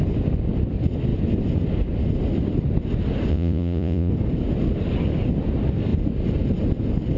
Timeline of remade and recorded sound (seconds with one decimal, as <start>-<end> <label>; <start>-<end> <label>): 0.0-3.3 recorded; 3.3-4.1 remade; 4.1-7.2 recorded